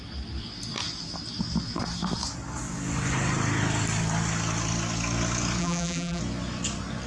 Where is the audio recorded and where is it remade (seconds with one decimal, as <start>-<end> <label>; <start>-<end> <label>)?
0.0-5.6 recorded; 5.6-6.2 remade; 6.2-7.1 recorded